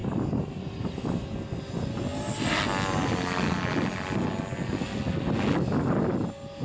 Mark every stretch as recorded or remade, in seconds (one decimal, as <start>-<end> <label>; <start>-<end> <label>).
0.0-6.6 recorded